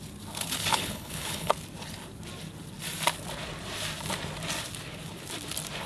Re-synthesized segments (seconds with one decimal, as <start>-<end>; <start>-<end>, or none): 0.6-1.5